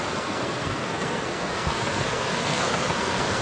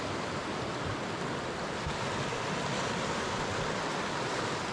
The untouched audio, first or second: second